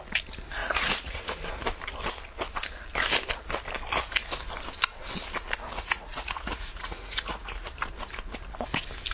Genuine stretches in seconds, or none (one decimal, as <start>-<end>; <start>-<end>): 0.0-0.6; 1.3-5.7; 7.7-9.1